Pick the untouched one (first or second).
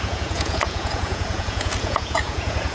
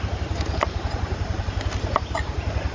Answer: second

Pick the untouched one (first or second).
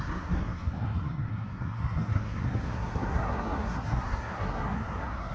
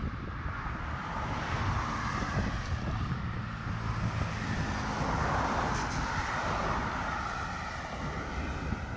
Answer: second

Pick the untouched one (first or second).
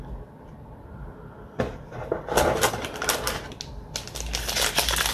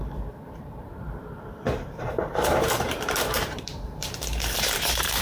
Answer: first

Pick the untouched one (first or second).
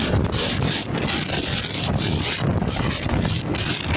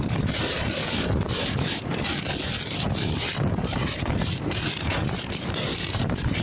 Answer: first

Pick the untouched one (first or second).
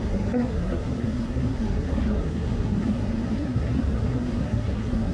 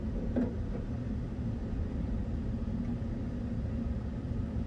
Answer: second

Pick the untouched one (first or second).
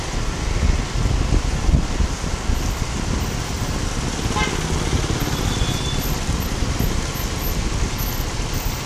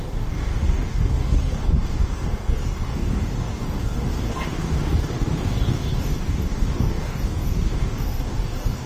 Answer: first